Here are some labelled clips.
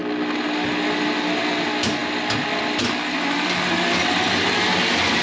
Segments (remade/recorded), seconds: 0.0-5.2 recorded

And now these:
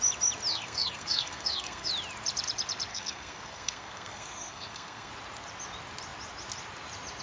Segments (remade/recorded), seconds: 0.0-0.5 recorded; 0.5-1.9 remade; 1.9-2.9 recorded; 2.9-5.1 remade; 5.1-7.2 recorded

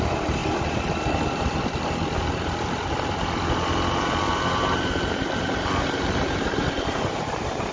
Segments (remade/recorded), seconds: 0.0-0.4 remade; 0.4-4.3 recorded; 4.3-7.7 remade

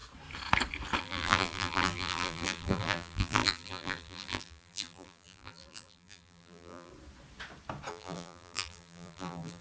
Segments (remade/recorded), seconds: 0.0-1.0 recorded; 1.0-6.9 remade; 6.9-7.9 recorded; 7.9-9.6 remade

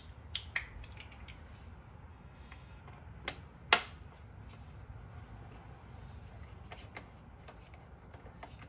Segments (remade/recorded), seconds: 0.0-2.1 recorded; 2.1-2.8 remade; 2.8-8.7 recorded

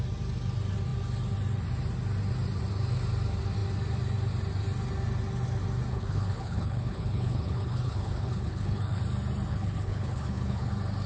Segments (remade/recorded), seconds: 0.0-5.9 recorded; 5.9-9.0 remade; 9.0-9.5 recorded; 9.5-10.7 remade; 10.7-11.1 recorded